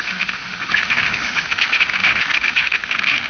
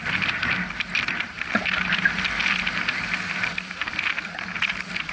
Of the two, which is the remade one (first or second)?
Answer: first